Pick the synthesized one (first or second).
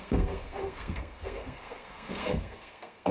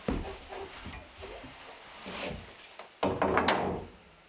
first